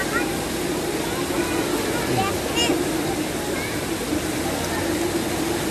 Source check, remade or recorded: recorded